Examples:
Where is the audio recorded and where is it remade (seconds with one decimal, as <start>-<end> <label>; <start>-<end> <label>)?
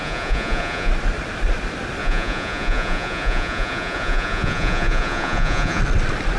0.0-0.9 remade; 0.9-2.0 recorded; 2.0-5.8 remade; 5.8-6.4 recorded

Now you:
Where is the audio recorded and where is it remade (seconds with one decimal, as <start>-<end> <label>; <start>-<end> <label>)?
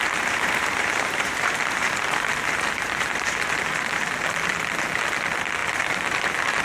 0.0-4.0 remade; 4.0-5.6 recorded; 5.6-6.6 remade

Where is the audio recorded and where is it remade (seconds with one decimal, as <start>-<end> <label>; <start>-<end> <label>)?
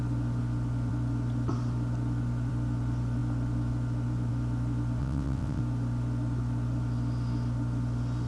0.0-5.0 recorded; 5.0-5.6 remade; 5.6-8.3 recorded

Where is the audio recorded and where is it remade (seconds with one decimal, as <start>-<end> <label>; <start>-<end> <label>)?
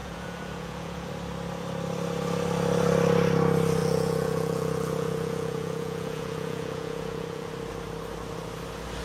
0.0-1.1 remade; 1.1-3.8 recorded; 3.8-7.5 remade; 7.5-9.0 recorded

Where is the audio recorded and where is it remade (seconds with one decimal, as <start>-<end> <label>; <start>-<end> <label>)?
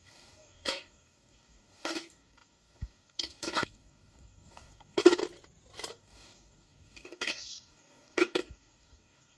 0.0-5.2 remade; 5.2-5.9 recorded; 5.9-9.4 remade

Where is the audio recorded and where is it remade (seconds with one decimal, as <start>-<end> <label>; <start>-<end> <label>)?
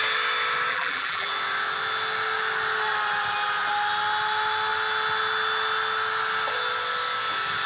0.0-0.7 recorded; 0.7-1.3 remade; 1.3-7.7 recorded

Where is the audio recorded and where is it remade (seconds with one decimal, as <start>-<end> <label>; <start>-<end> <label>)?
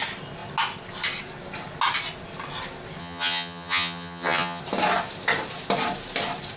0.0-3.0 recorded; 3.0-4.6 remade; 4.6-6.6 recorded